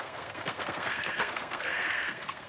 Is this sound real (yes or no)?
no